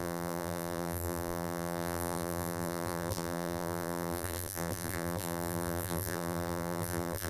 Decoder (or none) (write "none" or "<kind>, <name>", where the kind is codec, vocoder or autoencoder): vocoder, BigVGAN v2